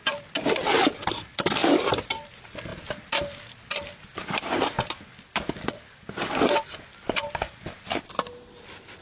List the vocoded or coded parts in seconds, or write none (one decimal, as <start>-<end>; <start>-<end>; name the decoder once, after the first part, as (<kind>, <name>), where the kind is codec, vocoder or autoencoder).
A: none